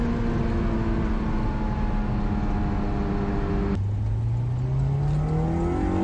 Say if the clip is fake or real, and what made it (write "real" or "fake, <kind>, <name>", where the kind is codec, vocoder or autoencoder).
real